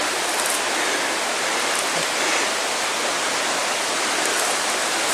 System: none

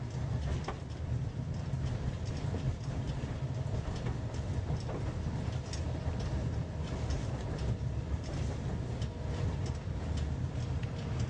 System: none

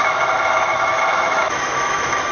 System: autoencoder, DAC-VAE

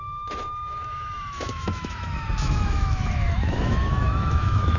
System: autoencoder, DAC-VAE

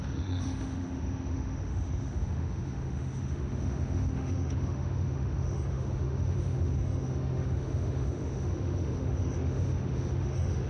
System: autoencoder, DAC-VAE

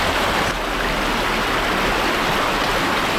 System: none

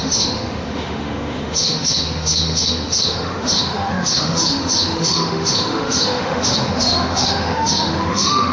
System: autoencoder, DAC-VAE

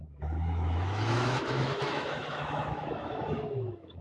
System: autoencoder, DAC-VAE